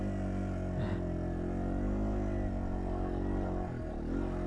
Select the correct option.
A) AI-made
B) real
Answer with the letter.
B